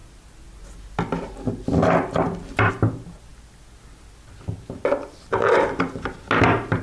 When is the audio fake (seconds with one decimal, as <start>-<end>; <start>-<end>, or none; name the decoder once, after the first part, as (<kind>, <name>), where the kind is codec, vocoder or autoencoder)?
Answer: none

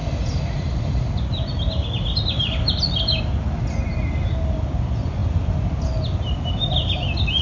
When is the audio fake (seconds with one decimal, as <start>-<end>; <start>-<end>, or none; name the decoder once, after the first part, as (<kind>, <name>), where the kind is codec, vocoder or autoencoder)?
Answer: none

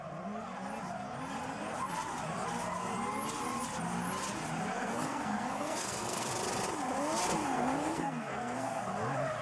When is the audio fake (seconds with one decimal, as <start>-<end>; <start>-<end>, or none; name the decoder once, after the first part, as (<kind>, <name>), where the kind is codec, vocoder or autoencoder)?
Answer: 4.7-6.3 (codec, SNAC); 7.4-8.8

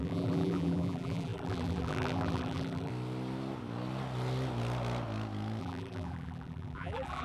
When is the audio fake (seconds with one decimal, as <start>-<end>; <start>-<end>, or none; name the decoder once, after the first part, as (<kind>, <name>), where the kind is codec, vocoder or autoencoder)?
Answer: 0.0-2.9 (vocoder, BigVGAN v2); 5.6-7.2

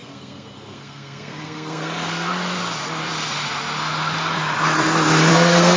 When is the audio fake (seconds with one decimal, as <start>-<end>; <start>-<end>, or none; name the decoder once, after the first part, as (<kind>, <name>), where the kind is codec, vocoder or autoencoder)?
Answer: 0.0-2.3 (codec, SNAC); 5.3-5.8